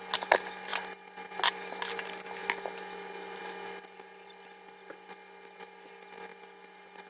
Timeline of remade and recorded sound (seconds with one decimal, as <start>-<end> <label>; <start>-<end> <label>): 0.0-7.1 recorded